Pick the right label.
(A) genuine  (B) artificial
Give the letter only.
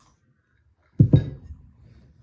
A